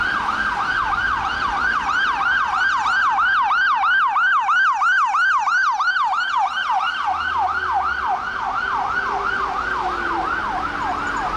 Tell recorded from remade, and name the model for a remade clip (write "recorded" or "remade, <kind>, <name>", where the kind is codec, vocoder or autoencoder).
recorded